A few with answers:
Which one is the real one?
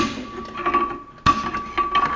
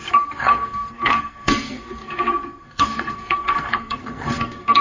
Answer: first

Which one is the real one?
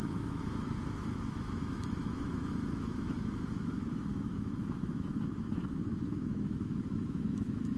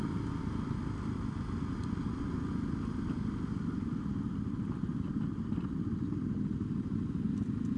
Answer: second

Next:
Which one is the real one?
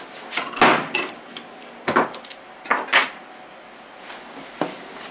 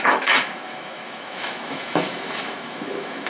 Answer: first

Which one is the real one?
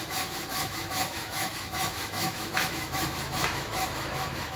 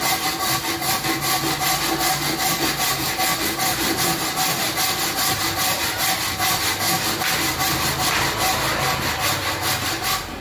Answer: second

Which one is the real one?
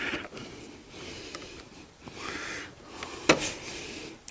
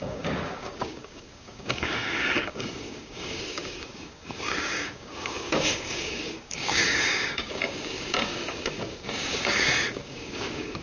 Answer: first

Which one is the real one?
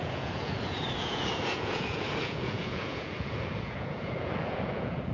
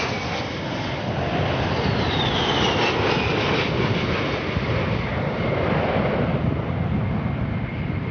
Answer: second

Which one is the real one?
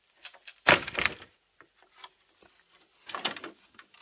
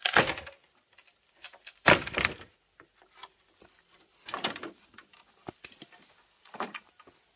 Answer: first